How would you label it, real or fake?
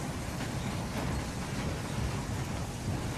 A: real